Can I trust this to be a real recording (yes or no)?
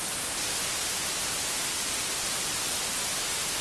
yes